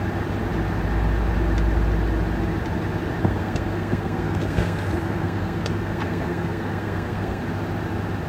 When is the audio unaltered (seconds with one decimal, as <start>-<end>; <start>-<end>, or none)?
0.0-3.2; 7.4-8.3